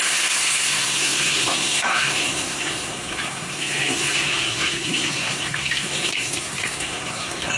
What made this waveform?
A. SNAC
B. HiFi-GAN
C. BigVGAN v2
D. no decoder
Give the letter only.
A